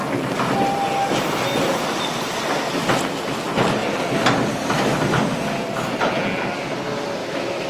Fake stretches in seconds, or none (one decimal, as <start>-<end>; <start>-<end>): 7.2-7.7